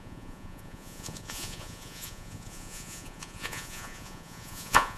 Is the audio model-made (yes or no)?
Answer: yes